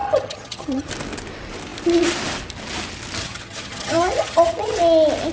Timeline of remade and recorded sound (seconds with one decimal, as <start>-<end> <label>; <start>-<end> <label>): 0.0-0.9 remade; 0.9-3.2 recorded; 3.2-4.8 remade; 4.8-5.3 recorded